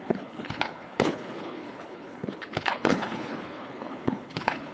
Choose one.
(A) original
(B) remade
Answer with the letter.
B